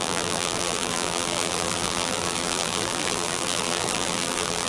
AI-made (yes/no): yes